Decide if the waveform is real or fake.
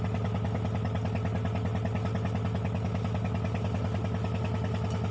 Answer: real